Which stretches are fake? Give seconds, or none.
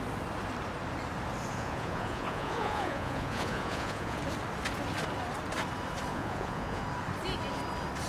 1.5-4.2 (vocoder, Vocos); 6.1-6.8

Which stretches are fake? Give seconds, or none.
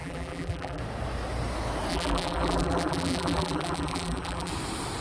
0.0-0.8 (vocoder, BigVGAN v2); 1.9-4.5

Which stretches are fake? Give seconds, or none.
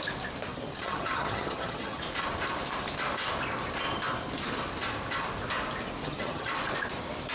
0.5-2.0 (vocoder, HiFi-GAN); 6.0-6.5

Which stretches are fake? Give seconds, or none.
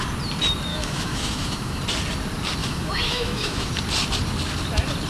0.7-1.8 (autoencoder, DAC-VAE); 2.6-3.7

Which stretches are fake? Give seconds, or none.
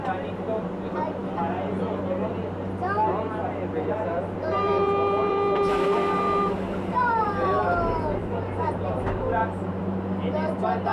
3.4-7.3 (vocoder, BigVGAN v2); 8.2-9.8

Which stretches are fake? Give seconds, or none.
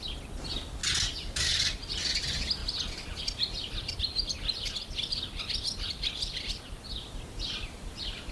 0.0-0.8 (vocoder, BigVGAN v2); 1.9-2.6; 3.2-4.0; 4.9-8.3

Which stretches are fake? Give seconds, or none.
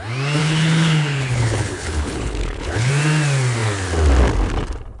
0.4-2.9 (codec, HILCodec)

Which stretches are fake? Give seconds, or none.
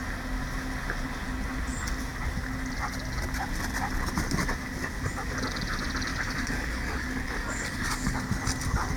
6.1-8.2 (codec, DAC)